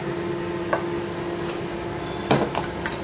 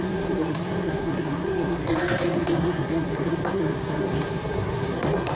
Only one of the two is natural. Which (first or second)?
first